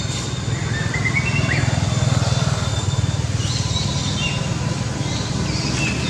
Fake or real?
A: real